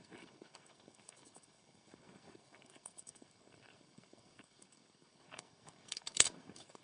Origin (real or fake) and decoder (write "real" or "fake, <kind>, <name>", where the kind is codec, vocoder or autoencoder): fake, codec, SNAC